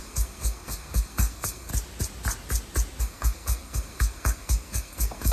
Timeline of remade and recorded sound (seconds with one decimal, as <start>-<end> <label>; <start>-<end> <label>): 0.0-1.7 remade; 1.7-3.0 recorded; 3.0-5.3 remade